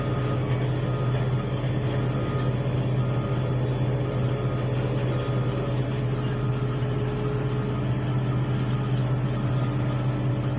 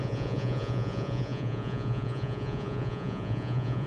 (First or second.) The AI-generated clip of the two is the second